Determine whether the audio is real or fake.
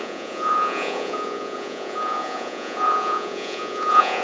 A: fake